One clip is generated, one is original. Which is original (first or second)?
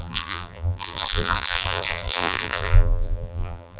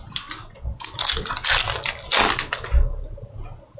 second